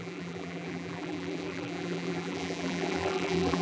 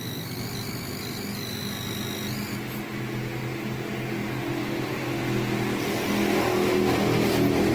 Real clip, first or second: second